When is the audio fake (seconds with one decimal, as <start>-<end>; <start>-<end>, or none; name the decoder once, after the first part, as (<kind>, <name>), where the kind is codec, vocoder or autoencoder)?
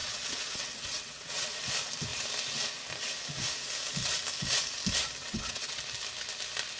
0.0-1.6 (vocoder, WaveNeXt); 5.2-5.8